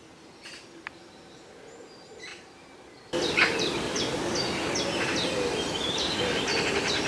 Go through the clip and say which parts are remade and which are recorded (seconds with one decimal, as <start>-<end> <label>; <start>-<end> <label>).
0.0-7.1 recorded